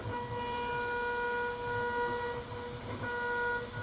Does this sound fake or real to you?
real